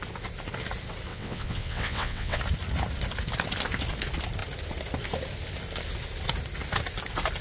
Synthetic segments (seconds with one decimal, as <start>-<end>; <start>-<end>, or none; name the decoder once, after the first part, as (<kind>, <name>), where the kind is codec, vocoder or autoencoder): 1.1-2.4 (vocoder, WaveNeXt)